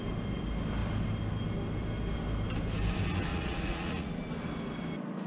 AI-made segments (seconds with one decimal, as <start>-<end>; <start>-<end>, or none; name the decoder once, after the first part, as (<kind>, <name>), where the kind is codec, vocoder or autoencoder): 3.3-4.1 (vocoder, Vocos)